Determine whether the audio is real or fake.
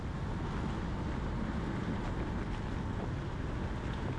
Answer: real